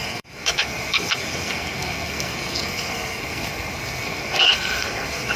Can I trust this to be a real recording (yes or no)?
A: no